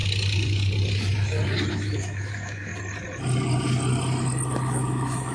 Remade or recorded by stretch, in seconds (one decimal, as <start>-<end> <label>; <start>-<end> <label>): 0.0-1.7 recorded; 1.7-2.7 remade; 2.7-4.6 recorded; 4.6-5.3 remade